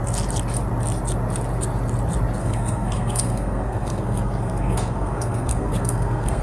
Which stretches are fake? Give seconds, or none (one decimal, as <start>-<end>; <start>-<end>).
2.4-6.4